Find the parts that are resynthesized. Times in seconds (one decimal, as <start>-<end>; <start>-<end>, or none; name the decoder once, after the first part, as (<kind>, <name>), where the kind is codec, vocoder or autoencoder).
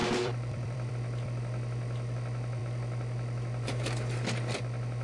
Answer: 0.0-0.9 (vocoder, BigVGAN v2)